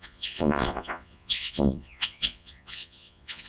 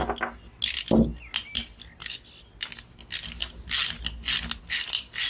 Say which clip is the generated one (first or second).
first